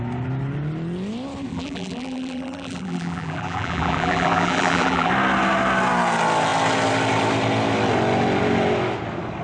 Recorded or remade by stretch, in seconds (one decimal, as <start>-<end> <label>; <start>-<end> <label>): 0.0-1.5 recorded; 1.5-5.1 remade; 5.1-9.4 recorded